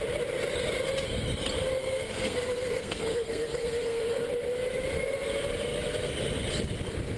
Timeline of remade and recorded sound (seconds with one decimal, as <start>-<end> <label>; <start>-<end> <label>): 0.0-1.8 recorded; 1.8-4.2 remade; 4.2-7.2 recorded